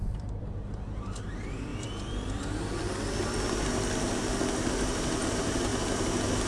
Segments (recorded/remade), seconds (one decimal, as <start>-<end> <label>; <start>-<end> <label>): 0.0-1.7 remade; 1.7-4.5 recorded; 4.5-5.7 remade; 5.7-6.5 recorded